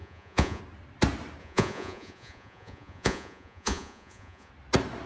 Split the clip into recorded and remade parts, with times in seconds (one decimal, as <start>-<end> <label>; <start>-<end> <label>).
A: 0.0-0.6 remade; 0.6-1.4 recorded; 1.4-4.5 remade; 4.5-5.1 recorded